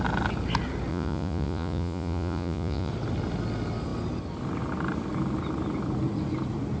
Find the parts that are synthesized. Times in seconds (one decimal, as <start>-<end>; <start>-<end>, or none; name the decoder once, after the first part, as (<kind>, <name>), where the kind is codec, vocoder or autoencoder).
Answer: 0.9-2.9 (vocoder, Vocos)